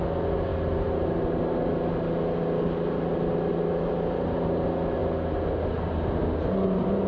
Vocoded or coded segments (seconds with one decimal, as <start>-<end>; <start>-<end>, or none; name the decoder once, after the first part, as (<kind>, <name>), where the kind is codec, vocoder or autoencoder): none